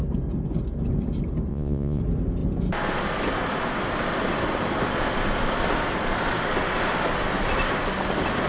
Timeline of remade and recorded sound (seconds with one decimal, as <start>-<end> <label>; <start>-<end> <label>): 0.0-1.5 recorded; 1.5-2.0 remade; 2.0-8.5 recorded